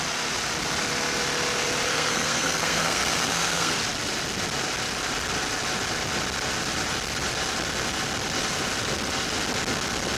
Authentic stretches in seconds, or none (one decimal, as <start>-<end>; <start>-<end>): 0.0-1.9; 3.7-10.2